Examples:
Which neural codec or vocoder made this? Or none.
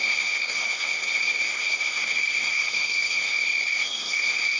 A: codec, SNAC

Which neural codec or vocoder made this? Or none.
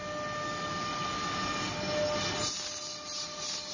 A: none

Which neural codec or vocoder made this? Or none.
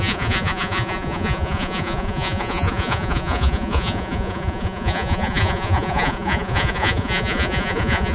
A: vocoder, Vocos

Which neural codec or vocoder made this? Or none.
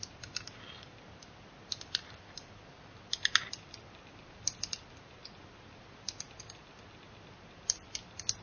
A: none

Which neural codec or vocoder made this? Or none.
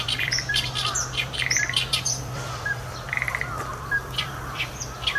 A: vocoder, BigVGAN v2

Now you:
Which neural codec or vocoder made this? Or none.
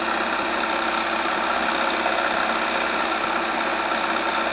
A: none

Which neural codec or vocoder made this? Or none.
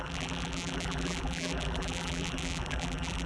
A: vocoder, BigVGAN v2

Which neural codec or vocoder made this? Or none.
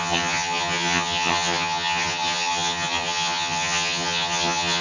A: vocoder, HiFi-GAN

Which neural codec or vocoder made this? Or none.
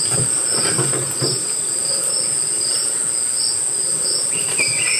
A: none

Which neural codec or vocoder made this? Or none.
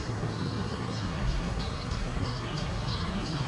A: codec, SNAC